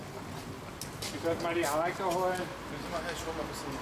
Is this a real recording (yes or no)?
yes